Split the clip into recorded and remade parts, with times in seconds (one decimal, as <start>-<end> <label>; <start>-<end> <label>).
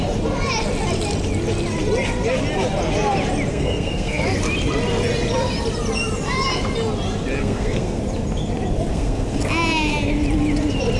0.0-3.5 recorded; 3.5-4.2 remade; 4.2-7.4 recorded; 7.4-8.0 remade; 8.0-8.9 recorded; 8.9-9.4 remade; 9.4-11.0 recorded